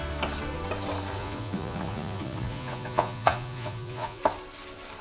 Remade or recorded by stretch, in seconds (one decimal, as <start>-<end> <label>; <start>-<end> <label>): 0.0-1.2 recorded; 1.2-4.2 remade; 4.2-5.0 recorded